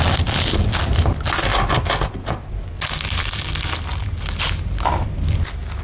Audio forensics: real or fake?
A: real